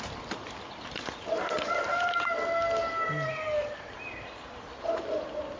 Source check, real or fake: real